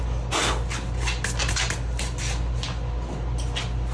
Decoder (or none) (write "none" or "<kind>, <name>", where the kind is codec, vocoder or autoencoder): none